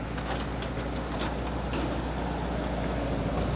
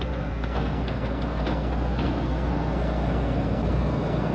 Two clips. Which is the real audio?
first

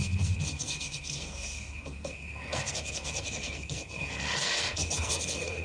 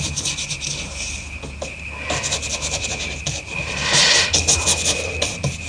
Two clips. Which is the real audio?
second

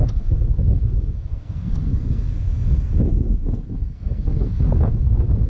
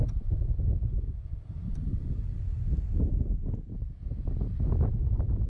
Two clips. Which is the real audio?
second